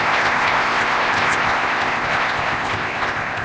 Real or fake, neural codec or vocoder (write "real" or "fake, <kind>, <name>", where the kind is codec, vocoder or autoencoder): fake, codec, ZipCodec